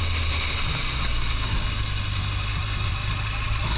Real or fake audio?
real